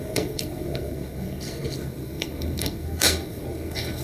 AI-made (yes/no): yes